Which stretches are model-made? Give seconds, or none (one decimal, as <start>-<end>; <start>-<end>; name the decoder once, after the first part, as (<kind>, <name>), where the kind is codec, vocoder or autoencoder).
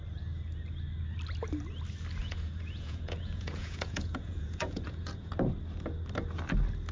2.2-5.3 (vocoder, Vocos)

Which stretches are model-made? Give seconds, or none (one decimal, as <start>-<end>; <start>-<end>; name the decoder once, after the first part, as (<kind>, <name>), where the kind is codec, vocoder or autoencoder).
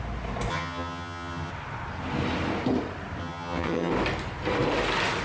0.5-1.5 (vocoder, HiFi-GAN); 3.2-3.9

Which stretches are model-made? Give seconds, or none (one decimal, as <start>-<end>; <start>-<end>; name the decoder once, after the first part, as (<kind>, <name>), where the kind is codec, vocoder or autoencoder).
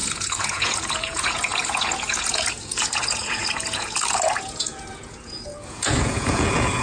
0.0-6.8 (vocoder, Vocos)